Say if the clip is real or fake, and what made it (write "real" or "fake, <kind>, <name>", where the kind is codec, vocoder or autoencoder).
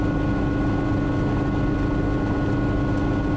real